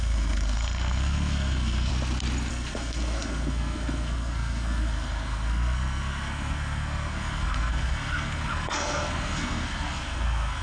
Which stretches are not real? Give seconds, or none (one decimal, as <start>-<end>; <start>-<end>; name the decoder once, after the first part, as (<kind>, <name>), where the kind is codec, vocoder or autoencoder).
0.0-1.9 (codec, SNAC); 2.5-10.6